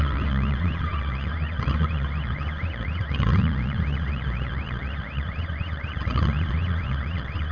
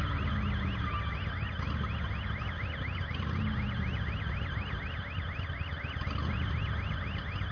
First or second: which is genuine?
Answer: second